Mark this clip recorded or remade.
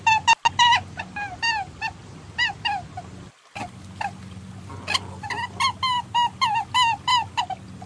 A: recorded